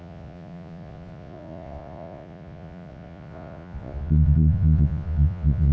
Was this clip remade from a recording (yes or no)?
yes